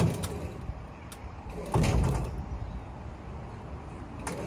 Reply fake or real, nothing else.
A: real